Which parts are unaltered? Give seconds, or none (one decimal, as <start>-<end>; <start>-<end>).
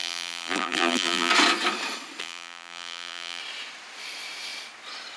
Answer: 1.3-2.2; 3.4-5.2